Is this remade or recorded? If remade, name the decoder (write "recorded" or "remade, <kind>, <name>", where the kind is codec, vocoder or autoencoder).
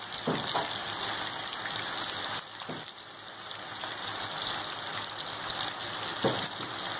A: recorded